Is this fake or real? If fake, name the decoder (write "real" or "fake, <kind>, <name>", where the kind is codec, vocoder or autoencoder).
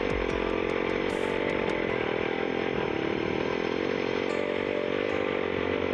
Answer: real